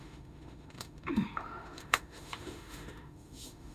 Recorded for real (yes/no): no